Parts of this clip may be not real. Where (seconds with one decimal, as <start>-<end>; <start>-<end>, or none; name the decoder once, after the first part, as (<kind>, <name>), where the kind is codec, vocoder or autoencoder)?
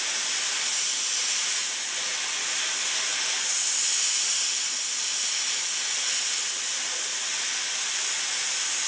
none